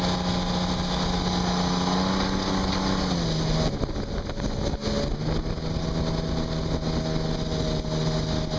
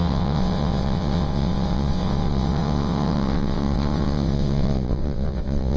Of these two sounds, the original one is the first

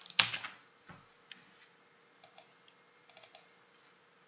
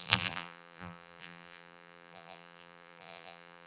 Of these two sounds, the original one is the first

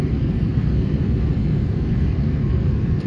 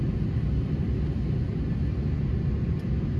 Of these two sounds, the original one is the second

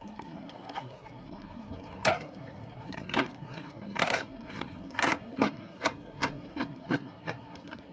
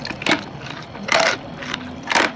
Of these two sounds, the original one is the second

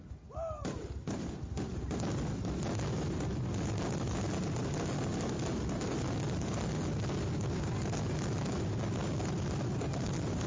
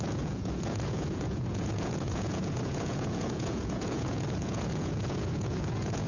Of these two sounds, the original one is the first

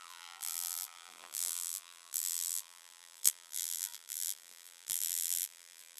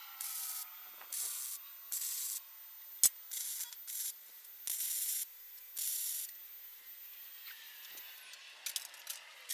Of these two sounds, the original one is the second